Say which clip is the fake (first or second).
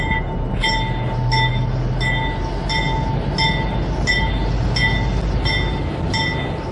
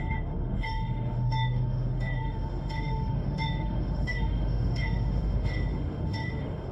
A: second